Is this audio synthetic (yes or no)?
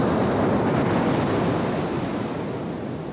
no